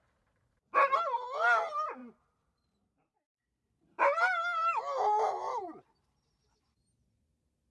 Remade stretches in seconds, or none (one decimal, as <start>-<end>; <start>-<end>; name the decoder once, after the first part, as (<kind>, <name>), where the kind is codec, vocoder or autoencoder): 2.0-6.6 (vocoder, BigVGAN v2)